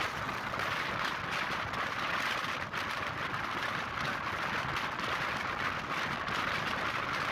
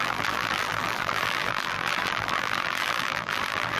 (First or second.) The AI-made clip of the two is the second